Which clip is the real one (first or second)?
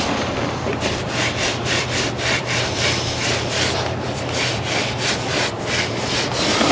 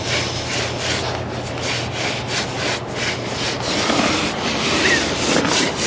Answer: second